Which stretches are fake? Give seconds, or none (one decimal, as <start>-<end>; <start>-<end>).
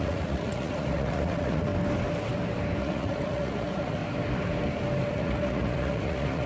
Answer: 0.0-1.7; 2.8-4.0; 5.1-6.5